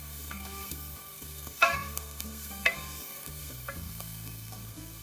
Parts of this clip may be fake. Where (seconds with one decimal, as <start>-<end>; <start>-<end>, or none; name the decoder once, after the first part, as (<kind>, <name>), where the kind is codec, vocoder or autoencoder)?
0.0-5.0 (codec, SNAC)